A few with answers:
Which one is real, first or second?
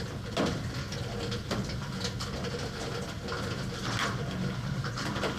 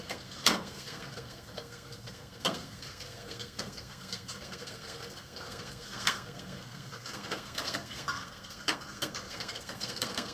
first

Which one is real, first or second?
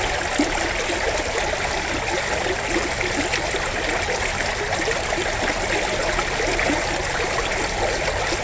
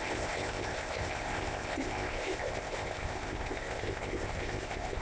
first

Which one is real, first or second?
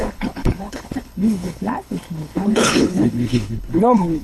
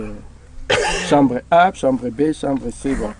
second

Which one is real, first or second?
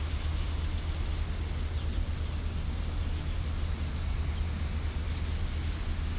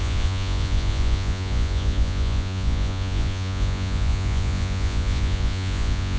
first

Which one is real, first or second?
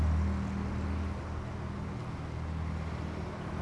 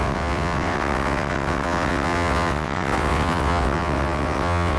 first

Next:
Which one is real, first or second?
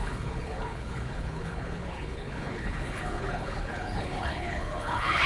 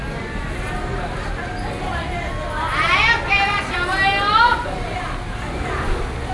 second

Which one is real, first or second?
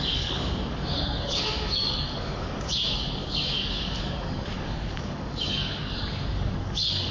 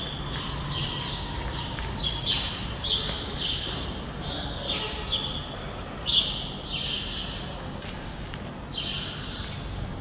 second